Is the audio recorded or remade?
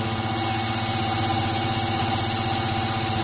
recorded